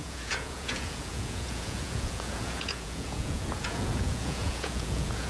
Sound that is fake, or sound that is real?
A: fake